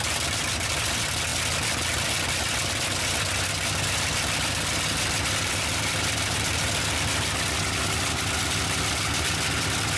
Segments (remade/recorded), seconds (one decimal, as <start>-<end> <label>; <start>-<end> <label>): 0.0-10.0 recorded